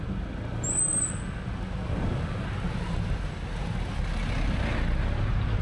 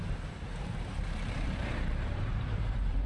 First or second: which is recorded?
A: first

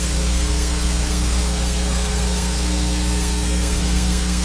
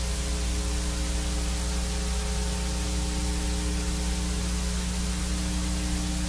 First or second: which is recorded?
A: second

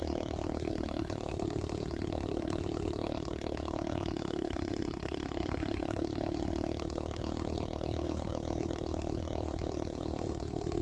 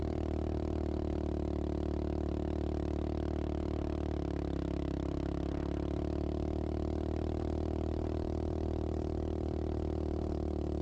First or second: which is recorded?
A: second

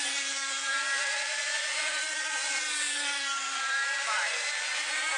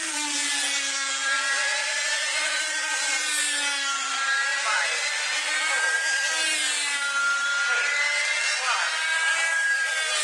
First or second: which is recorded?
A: second